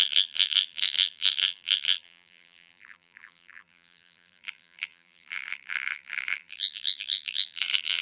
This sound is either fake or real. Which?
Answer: fake